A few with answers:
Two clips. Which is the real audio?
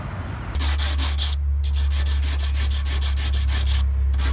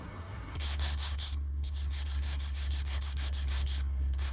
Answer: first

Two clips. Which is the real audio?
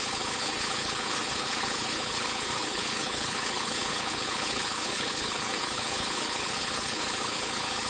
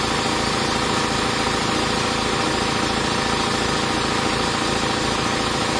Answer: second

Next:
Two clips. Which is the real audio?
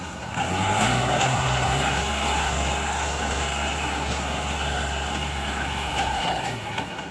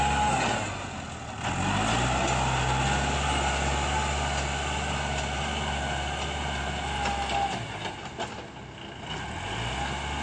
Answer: second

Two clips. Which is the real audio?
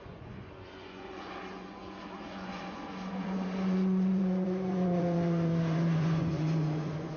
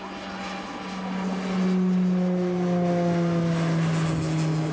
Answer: second